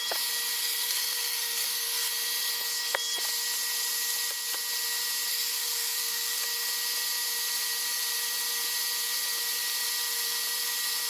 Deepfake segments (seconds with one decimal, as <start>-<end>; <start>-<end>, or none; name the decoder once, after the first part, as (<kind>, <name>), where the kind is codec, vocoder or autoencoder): 0.6-2.1 (codec, SNAC); 5.3-6.4